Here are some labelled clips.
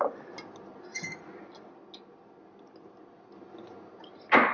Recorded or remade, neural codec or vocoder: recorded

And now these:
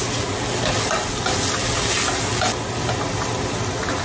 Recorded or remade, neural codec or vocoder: recorded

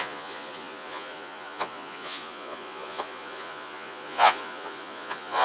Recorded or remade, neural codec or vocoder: remade, vocoder, Vocos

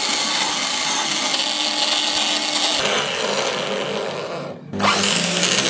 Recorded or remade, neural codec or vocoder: recorded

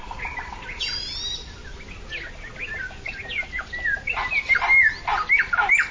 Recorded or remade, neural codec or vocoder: recorded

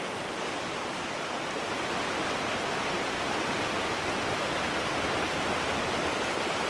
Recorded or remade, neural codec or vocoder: recorded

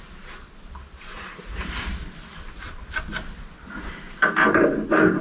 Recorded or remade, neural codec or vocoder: recorded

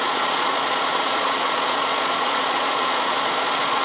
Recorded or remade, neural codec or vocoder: remade, vocoder, Vocos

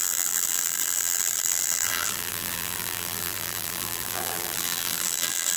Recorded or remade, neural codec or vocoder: remade, vocoder, BigVGAN v2